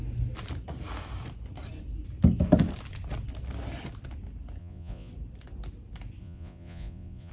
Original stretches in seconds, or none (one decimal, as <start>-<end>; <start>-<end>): 0.0-4.6; 5.1-6.2

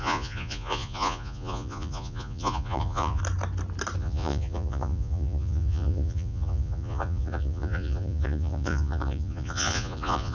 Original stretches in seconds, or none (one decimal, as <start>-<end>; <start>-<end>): 3.2-4.0

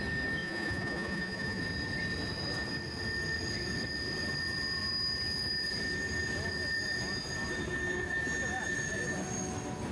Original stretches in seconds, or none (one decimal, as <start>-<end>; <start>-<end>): 0.0-0.4; 1.6-9.9

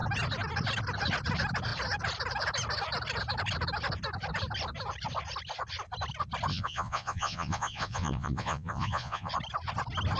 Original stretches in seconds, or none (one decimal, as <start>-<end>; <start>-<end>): 0.0-6.5; 9.3-10.2

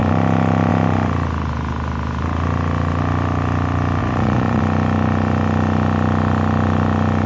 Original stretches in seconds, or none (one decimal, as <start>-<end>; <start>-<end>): 0.0-4.0; 4.6-7.3

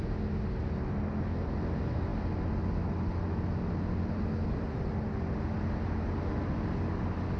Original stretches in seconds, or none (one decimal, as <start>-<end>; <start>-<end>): 0.0-7.4

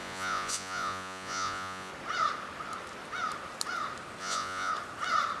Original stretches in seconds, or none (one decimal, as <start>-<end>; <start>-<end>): 1.9-4.2; 4.7-5.4

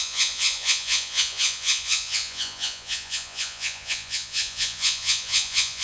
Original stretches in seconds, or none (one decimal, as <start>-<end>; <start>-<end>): none